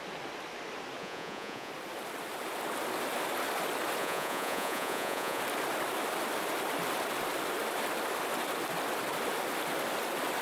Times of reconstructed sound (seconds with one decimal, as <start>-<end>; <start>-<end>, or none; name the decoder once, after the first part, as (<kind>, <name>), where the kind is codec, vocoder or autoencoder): 1.0-1.7 (vocoder, Vocos); 4.0-5.4